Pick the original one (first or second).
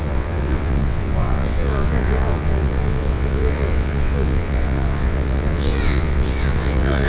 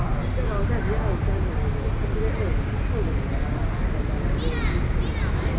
second